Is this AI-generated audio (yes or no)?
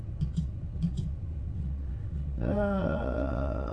yes